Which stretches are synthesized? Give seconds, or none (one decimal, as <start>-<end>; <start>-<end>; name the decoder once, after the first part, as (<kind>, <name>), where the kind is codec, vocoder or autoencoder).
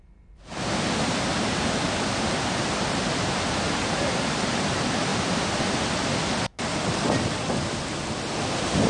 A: 0.0-1.3 (vocoder, BigVGAN v2); 2.4-5.1; 8.5-8.9